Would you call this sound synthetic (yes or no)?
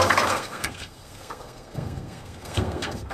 yes